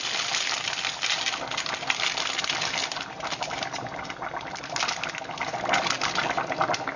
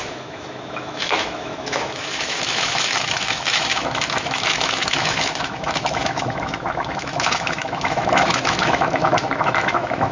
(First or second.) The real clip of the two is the first